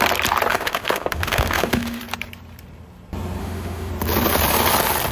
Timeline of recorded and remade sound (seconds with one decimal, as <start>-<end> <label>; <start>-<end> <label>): 0.0-0.5 recorded; 0.5-2.0 remade; 2.0-3.4 recorded; 3.4-3.9 remade; 3.9-5.1 recorded